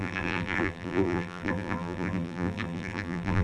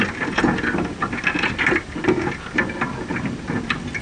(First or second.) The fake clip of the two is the first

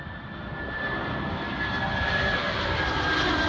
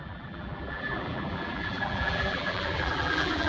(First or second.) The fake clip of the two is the second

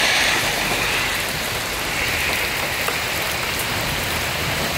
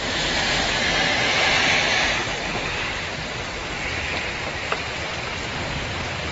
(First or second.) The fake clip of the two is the second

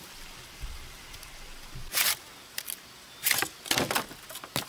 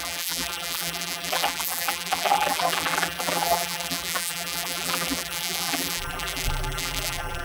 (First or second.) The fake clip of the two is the second